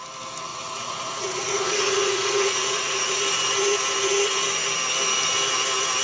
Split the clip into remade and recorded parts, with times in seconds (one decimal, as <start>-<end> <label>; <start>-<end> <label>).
0.0-0.5 recorded; 0.5-3.2 remade; 3.2-6.0 recorded